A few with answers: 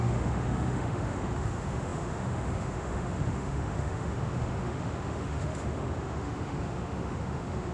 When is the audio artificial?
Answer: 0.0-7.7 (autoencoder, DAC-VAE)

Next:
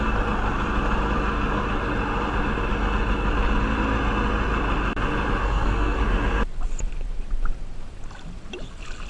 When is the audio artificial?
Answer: 5.4-6.0 (codec, SNAC)

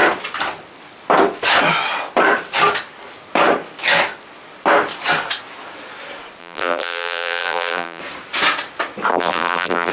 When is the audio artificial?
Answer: 6.4-8.0 (vocoder, BigVGAN v2); 9.1-9.9

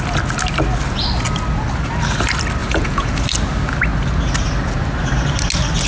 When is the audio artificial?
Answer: 2.6-3.2 (vocoder, Vocos)

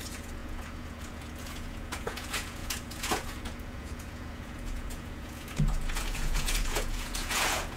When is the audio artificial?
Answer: 0.0-7.8 (vocoder, Vocos)

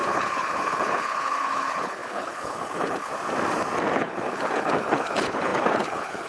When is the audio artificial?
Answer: 0.0-3.1 (codec, HILCodec); 3.9-6.3

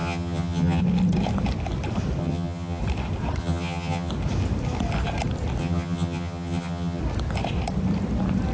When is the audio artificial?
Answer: 0.0-0.8 (vocoder, HiFi-GAN); 2.2-2.8; 3.4-4.1; 5.6-7.0